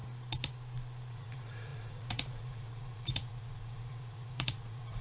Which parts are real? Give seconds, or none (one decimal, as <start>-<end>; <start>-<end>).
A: 0.0-1.1